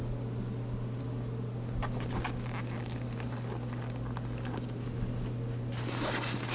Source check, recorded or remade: recorded